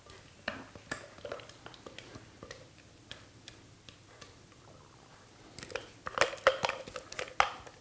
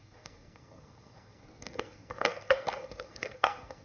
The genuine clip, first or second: first